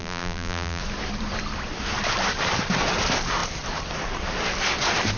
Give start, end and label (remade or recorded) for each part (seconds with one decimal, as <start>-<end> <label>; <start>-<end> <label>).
0.0-0.8 remade; 0.8-5.2 recorded